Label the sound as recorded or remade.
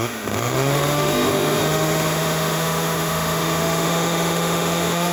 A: remade